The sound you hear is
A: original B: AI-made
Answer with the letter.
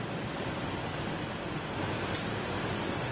A